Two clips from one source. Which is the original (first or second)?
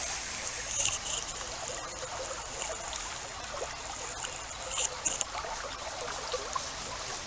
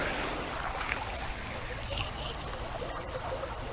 first